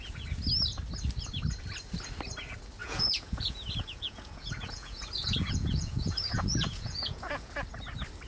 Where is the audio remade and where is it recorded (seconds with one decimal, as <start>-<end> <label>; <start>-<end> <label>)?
0.0-2.8 recorded; 2.8-7.5 remade; 7.5-8.3 recorded